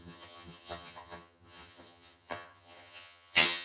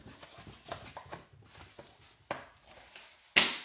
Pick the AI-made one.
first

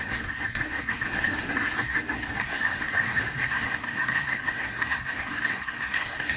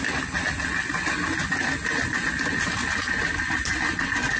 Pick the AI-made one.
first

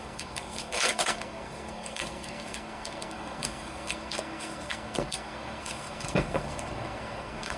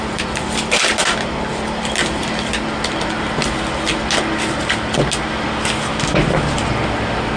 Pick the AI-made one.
first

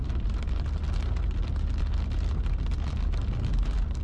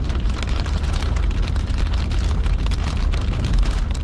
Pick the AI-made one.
second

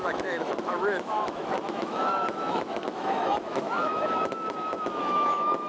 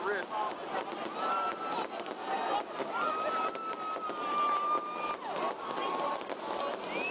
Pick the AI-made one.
first